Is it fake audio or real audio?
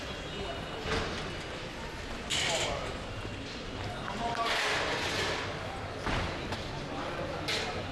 real